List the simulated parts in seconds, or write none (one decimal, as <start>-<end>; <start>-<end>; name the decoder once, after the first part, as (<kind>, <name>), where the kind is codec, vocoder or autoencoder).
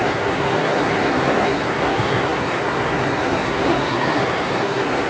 0.0-5.1 (codec, SNAC)